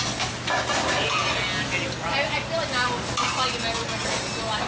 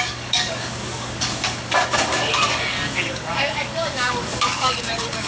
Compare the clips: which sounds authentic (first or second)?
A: first